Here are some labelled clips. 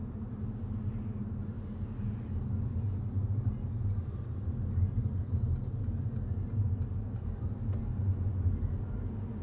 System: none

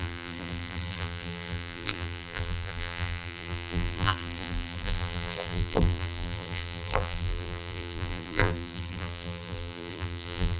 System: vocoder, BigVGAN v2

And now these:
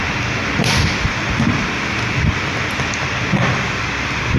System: vocoder, BigVGAN v2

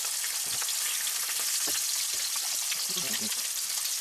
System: none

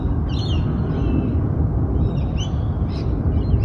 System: none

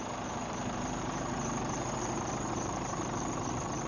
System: vocoder, BigVGAN v2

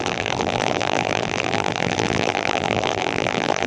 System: vocoder, BigVGAN v2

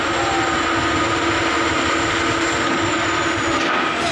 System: none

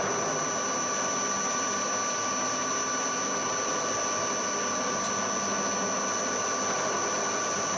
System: none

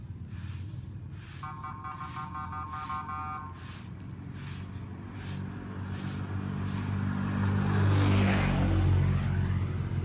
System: none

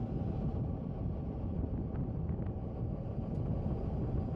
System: none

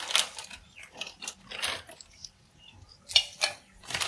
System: none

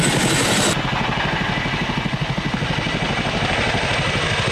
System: none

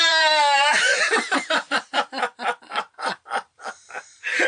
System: vocoder, BigVGAN v2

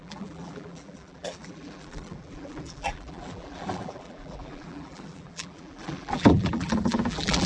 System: vocoder, BigVGAN v2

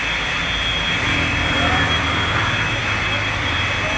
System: vocoder, BigVGAN v2